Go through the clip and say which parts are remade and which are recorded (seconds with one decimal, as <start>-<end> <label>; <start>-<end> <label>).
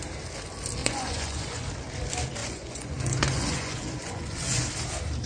0.0-0.8 recorded; 0.8-1.7 remade; 1.7-2.4 recorded; 2.4-4.7 remade; 4.7-5.3 recorded